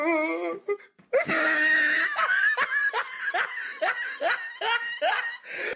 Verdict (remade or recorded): recorded